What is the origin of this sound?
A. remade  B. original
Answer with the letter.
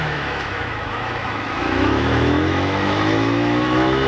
A